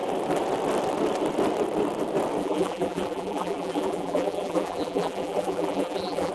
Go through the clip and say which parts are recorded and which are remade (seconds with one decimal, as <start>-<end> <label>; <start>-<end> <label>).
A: 0.0-2.4 recorded; 2.4-6.3 remade